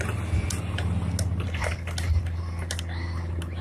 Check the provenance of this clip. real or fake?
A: real